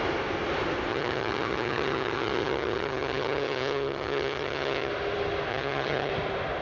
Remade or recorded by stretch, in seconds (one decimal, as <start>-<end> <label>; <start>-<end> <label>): 0.0-0.9 recorded; 0.9-4.9 remade; 4.9-5.5 recorded; 5.5-6.1 remade; 6.1-6.6 recorded